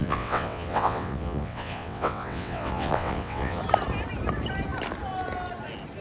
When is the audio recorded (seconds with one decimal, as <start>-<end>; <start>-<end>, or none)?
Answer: 3.6-6.0